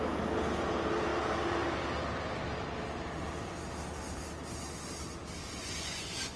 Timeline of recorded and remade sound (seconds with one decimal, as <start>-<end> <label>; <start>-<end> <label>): 0.0-5.6 recorded; 5.6-6.4 remade